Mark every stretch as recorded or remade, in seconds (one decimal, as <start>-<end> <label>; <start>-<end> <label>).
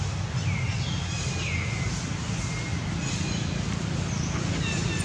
0.0-5.0 recorded